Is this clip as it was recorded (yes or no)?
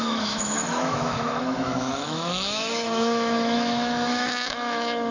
no